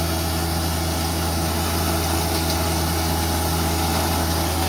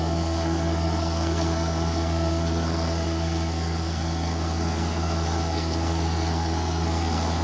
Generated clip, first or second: second